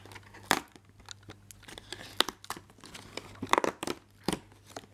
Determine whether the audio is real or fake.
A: real